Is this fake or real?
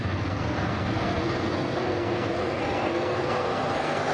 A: fake